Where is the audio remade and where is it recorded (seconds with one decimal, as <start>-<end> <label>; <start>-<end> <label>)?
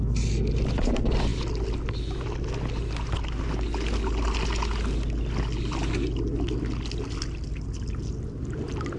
0.0-9.0 recorded